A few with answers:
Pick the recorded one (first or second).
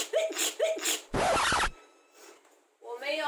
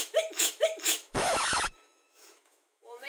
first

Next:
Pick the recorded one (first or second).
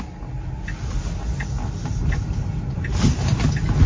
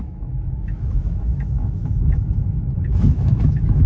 first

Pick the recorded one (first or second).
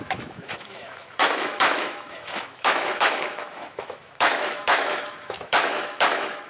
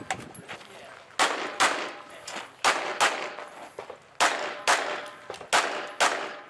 second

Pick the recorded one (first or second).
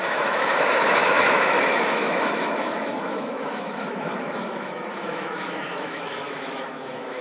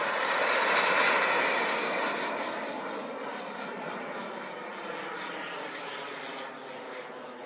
second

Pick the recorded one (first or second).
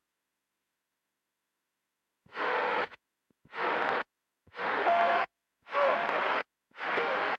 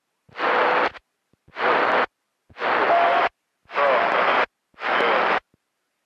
second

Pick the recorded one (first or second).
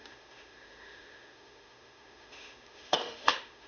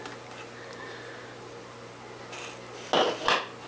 second